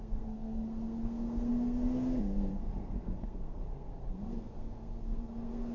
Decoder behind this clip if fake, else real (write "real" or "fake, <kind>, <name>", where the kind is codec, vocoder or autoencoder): fake, codec, SNAC